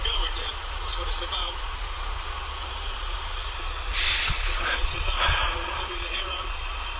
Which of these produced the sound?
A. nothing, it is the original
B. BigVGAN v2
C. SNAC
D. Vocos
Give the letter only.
D